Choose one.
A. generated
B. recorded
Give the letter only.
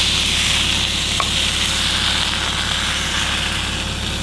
B